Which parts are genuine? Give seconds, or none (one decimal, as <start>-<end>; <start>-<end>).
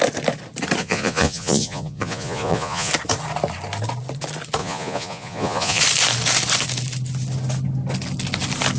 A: 0.0-0.8; 2.9-4.6; 5.8-8.8